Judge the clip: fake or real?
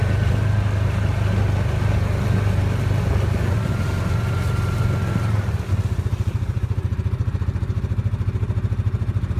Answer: real